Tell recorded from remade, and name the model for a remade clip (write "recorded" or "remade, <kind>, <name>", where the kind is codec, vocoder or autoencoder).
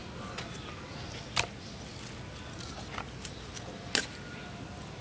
recorded